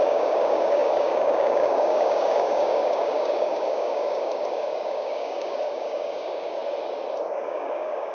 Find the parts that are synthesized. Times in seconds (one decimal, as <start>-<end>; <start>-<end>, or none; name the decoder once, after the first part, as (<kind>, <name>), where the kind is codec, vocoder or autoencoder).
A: 0.0-6.6 (codec, DAC); 7.2-8.1